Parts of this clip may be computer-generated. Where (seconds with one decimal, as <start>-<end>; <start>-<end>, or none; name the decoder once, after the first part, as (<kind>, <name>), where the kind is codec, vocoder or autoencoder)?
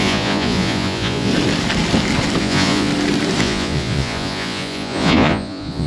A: 0.0-1.3 (vocoder, Vocos); 2.4-2.9; 3.4-5.9